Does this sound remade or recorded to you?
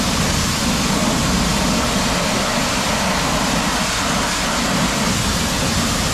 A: recorded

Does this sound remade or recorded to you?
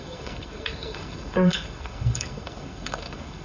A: remade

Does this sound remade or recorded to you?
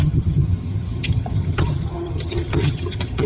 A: remade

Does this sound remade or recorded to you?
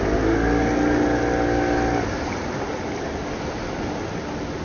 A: recorded